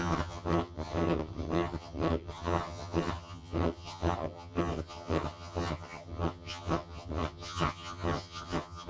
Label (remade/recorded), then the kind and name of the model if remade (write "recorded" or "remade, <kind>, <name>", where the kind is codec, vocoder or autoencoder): remade, vocoder, HiFi-GAN